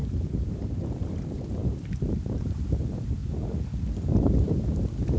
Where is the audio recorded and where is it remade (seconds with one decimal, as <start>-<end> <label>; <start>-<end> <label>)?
0.0-5.2 recorded